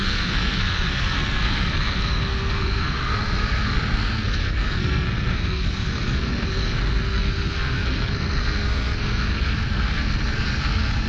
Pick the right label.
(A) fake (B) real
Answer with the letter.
A